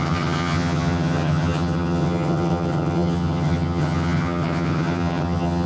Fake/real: fake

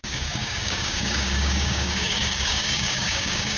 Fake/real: fake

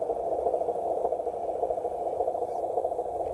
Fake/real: real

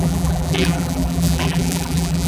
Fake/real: fake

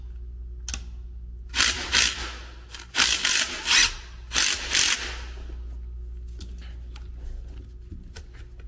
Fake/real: real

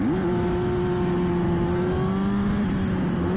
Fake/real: real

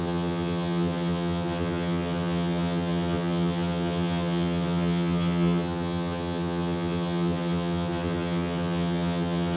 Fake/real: fake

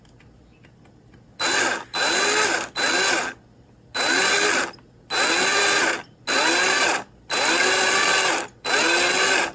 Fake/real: real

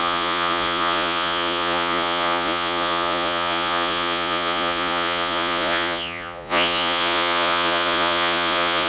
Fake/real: fake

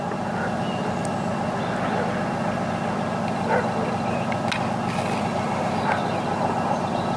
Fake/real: real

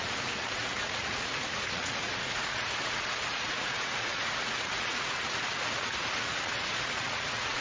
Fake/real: fake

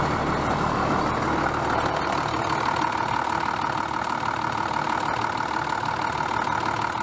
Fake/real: real